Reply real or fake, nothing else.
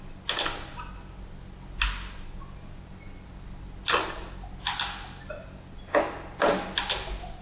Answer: real